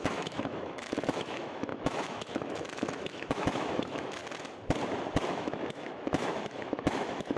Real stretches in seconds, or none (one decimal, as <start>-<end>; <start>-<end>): 4.2-5.3